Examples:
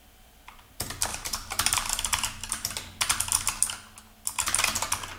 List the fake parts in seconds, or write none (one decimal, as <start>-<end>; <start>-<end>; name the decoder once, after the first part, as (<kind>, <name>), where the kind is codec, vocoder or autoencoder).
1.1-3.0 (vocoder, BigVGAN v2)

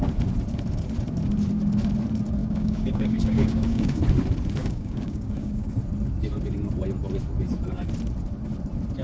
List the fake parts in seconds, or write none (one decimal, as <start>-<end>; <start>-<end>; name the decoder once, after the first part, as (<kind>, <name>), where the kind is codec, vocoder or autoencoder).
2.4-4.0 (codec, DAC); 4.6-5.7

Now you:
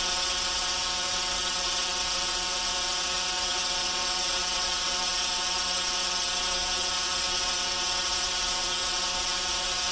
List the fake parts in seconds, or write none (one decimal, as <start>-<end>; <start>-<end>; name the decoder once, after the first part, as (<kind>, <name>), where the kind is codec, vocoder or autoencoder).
0.0-9.9 (vocoder, WaveNeXt)

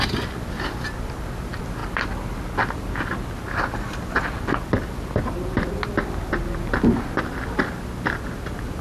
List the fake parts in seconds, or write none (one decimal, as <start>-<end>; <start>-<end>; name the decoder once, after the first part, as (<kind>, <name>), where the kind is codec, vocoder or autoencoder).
none